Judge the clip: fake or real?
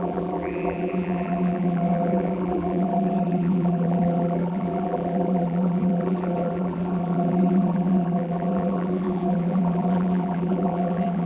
fake